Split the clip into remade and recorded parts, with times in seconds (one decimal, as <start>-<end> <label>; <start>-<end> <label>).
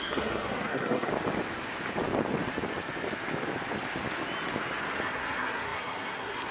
0.0-1.1 remade; 1.1-5.0 recorded; 5.0-6.5 remade